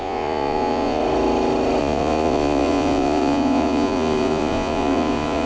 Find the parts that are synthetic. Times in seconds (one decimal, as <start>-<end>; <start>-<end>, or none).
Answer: 0.0-1.0; 1.8-5.5